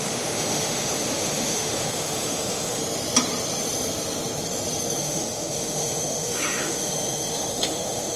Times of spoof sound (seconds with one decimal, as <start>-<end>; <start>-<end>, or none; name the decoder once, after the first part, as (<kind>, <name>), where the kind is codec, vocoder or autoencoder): 0.0-2.8 (autoencoder, DAC-VAE); 5.0-8.2